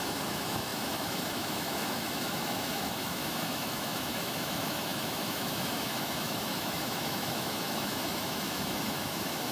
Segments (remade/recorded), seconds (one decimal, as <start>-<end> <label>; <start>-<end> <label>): 0.0-9.5 remade